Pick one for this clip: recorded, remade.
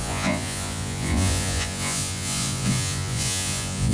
remade